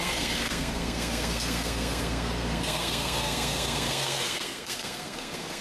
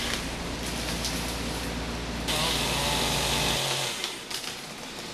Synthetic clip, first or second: first